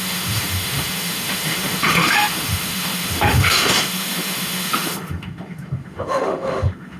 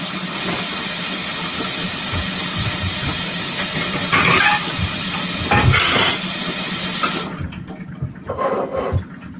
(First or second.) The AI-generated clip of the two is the first